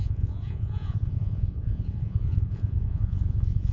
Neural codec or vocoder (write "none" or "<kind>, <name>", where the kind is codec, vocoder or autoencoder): vocoder, Vocos